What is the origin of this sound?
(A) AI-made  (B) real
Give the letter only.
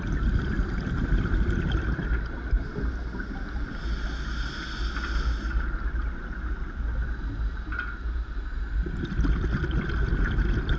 B